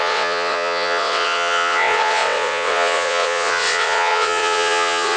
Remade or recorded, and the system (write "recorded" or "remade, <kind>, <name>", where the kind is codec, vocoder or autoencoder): remade, vocoder, WaveNeXt